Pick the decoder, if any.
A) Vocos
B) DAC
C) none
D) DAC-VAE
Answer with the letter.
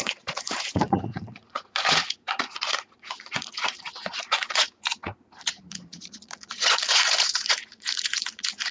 A